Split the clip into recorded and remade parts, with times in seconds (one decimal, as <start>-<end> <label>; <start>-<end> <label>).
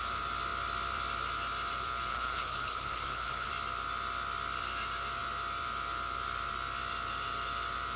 0.0-2.1 recorded; 2.1-3.5 remade; 3.5-8.0 recorded